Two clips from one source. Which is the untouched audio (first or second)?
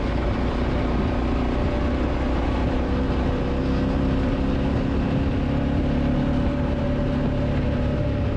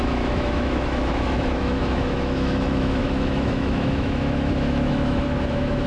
first